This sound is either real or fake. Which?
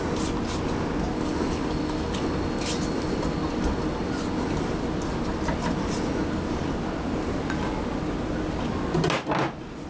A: real